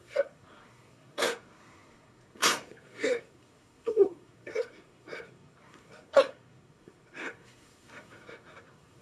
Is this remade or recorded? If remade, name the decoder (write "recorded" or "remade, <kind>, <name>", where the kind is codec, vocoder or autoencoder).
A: remade, codec, SNAC